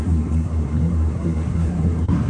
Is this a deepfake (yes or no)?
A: yes